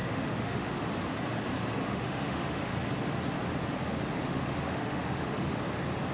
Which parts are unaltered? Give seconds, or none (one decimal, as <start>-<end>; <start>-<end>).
0.8-1.8; 2.7-4.2; 5.6-6.1